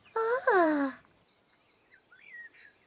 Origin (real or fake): fake